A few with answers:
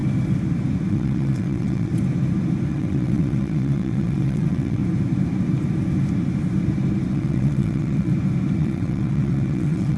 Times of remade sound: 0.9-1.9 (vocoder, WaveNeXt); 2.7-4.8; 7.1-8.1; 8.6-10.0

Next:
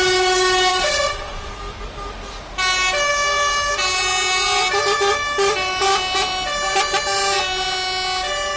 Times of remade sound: 0.7-1.5 (vocoder, WaveNeXt)